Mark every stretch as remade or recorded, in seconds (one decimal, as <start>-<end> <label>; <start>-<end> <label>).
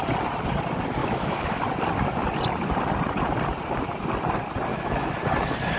0.0-1.0 recorded; 1.0-1.6 remade; 1.6-4.7 recorded; 4.7-5.2 remade; 5.2-5.8 recorded